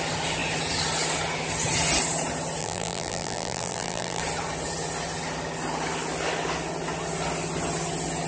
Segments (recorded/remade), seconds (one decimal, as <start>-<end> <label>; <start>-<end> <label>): 0.0-2.6 recorded; 2.6-4.2 remade; 4.2-8.3 recorded